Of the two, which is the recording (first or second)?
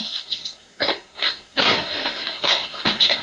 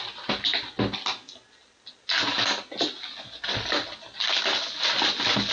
second